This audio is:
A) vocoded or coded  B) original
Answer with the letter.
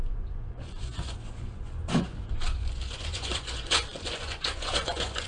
A